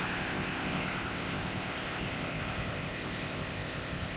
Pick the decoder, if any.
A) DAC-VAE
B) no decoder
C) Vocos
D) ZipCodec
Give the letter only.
D